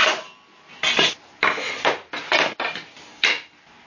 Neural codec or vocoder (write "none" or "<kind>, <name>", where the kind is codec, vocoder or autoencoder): none